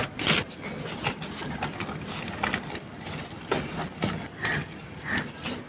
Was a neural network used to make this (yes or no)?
no